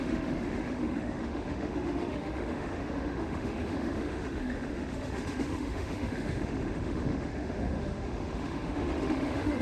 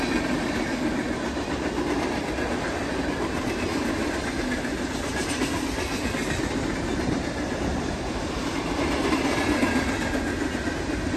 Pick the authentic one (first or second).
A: second